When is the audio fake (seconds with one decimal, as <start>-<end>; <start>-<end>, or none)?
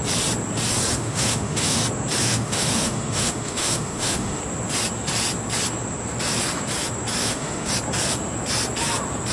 0.9-1.8; 2.2-4.4; 7.2-7.7